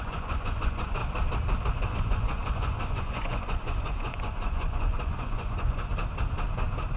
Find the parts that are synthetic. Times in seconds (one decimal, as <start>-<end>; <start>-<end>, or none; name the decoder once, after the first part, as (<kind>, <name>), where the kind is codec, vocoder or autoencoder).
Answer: 0.0-1.0 (vocoder, Vocos); 1.9-5.9